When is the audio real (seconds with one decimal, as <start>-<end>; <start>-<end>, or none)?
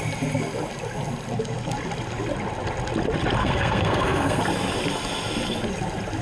0.0-3.4; 4.4-6.2